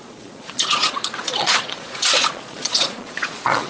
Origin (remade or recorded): remade